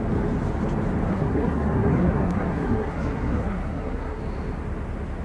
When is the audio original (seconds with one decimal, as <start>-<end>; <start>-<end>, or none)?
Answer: 0.0-1.1; 4.2-5.2